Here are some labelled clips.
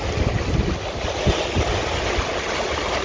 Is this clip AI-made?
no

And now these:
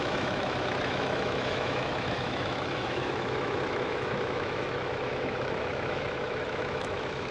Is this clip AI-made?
yes